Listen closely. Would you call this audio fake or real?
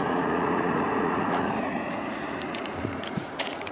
fake